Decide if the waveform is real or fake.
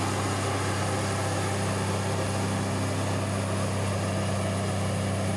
real